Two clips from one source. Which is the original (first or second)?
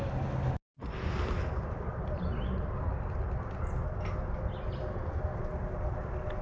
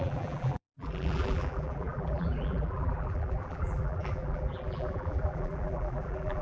first